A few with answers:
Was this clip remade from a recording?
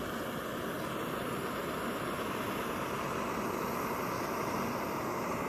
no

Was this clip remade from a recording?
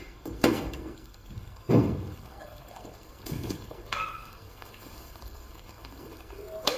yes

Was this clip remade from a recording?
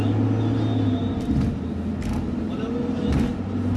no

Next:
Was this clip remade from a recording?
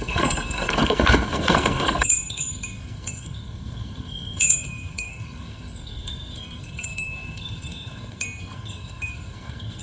yes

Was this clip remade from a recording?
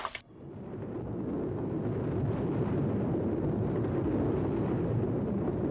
no